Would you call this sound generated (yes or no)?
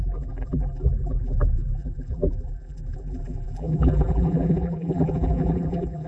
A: yes